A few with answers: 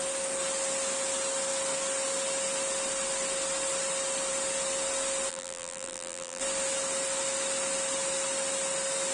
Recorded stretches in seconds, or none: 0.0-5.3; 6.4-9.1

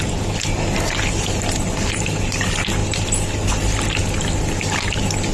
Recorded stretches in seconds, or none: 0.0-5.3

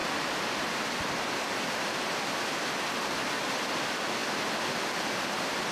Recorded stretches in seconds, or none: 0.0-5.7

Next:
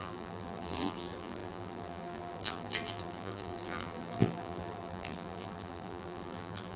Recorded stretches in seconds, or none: none